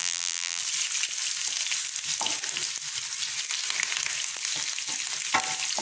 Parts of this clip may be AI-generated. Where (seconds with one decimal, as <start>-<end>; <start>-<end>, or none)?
0.0-0.6